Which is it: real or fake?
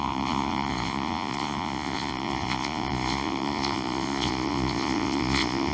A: fake